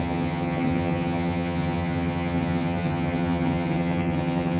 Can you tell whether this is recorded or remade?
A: remade